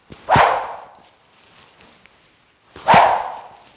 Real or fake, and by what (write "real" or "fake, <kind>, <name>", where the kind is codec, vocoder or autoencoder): real